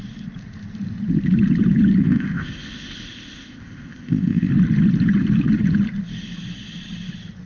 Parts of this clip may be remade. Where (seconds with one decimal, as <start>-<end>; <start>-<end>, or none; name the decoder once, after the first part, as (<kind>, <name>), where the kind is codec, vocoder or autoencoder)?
2.0-4.5 (codec, ZipCodec)